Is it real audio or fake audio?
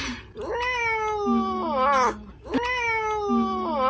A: real